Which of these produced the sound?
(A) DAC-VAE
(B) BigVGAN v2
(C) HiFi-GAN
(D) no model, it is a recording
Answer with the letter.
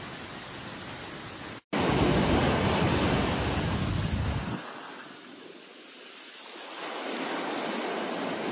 D